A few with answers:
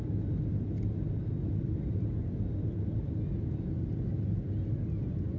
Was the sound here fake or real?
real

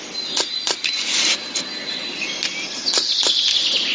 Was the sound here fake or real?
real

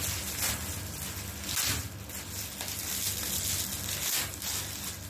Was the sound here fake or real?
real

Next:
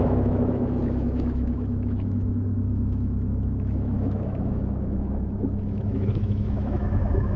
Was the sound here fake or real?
fake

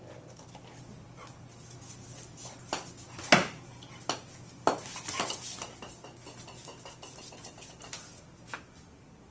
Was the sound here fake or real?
real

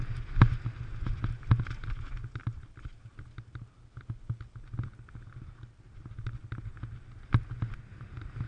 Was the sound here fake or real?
real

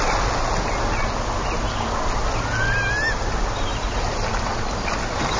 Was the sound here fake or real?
real